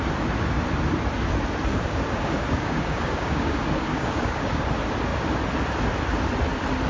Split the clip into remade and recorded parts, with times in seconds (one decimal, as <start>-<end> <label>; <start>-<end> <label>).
0.0-1.7 recorded; 1.7-4.6 remade; 4.6-6.9 recorded